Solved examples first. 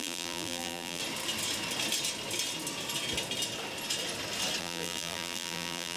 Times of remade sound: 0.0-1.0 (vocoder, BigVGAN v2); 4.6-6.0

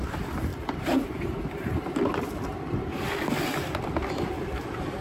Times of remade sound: 0.5-1.4 (vocoder, BigVGAN v2)